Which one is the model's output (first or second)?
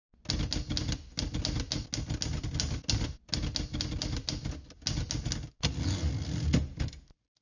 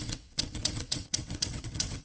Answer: second